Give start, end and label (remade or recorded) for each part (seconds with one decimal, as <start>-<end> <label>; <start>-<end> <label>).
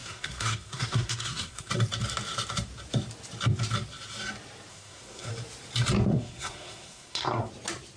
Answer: 0.0-1.7 remade; 1.7-4.7 recorded; 4.7-5.3 remade; 5.3-6.1 recorded; 6.1-7.5 remade; 7.5-8.0 recorded